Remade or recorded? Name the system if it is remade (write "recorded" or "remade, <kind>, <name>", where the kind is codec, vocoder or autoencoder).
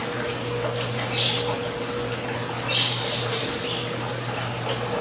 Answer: recorded